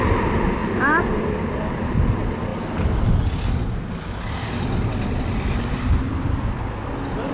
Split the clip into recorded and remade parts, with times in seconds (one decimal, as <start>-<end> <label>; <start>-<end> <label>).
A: 0.0-7.3 recorded